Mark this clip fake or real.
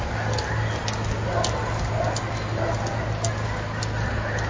real